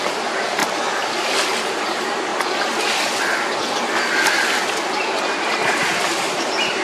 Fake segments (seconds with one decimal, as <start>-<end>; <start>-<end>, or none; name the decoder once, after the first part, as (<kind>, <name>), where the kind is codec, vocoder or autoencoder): 0.0-0.6 (vocoder, BigVGAN v2); 1.7-2.3; 6.3-6.8